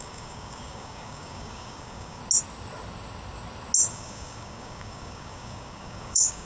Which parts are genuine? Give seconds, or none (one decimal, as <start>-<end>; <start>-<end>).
2.2-3.9